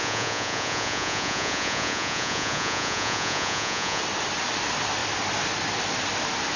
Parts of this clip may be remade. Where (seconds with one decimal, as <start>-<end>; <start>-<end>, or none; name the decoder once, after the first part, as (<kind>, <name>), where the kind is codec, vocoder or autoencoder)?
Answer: 0.0-4.0 (vocoder, Vocos)